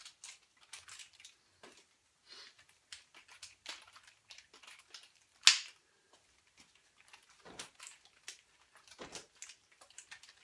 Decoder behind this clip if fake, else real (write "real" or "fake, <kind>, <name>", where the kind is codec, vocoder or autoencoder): real